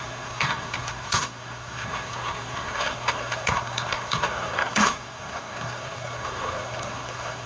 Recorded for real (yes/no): no